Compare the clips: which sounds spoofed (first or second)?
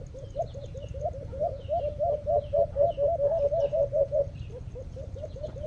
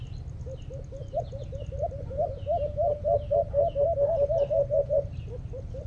first